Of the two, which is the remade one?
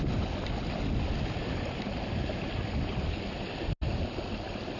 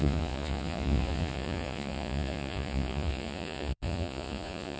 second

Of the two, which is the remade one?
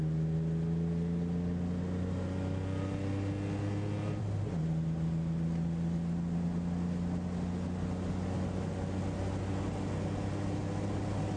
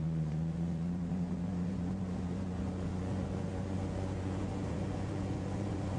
second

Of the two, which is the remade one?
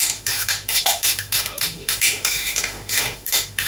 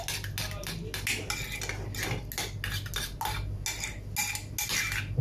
first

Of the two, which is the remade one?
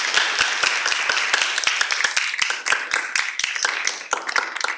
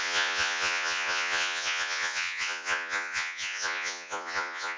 second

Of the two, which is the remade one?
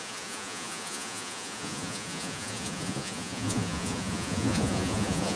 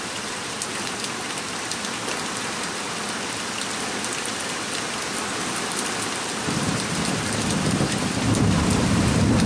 first